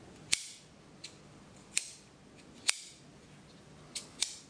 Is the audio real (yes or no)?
yes